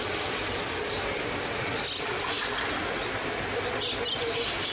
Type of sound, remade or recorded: recorded